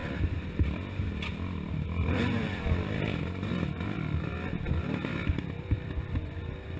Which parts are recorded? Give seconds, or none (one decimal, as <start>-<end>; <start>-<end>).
none